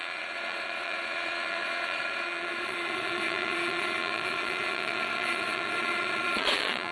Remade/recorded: remade